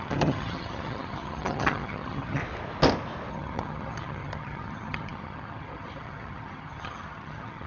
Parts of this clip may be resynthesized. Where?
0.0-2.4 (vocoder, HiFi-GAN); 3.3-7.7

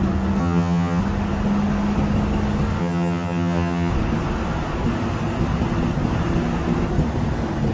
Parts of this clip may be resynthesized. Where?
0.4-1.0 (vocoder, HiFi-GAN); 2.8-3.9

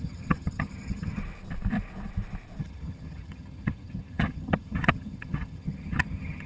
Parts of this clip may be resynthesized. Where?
0.0-1.2 (vocoder, HiFi-GAN); 2.6-6.5